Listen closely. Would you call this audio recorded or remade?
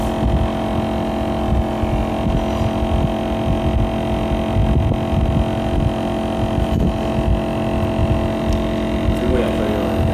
recorded